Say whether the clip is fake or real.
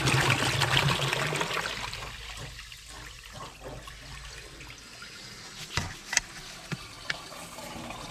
real